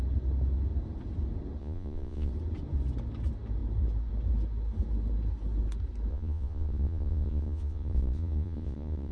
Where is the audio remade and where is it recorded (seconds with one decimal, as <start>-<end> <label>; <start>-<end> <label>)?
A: 0.0-1.6 recorded; 1.6-2.3 remade; 2.3-6.1 recorded; 6.1-9.1 remade